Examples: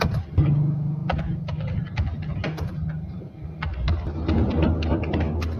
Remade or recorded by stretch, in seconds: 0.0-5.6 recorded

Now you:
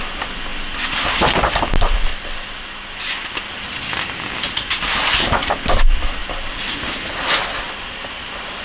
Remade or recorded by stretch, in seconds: 0.0-8.6 recorded

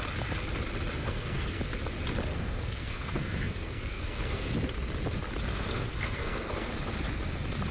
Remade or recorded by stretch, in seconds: 0.0-1.0 recorded; 1.0-1.6 remade; 1.6-2.3 recorded; 2.3-4.5 remade; 4.5-5.5 recorded; 5.5-6.7 remade; 6.7-7.7 recorded